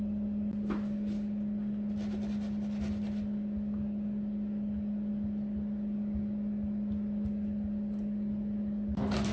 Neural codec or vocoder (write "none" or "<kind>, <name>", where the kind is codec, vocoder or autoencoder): none